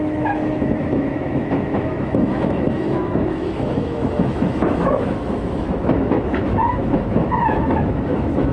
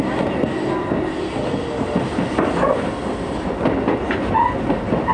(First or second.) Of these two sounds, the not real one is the first